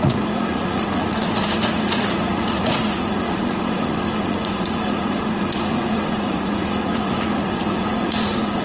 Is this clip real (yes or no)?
no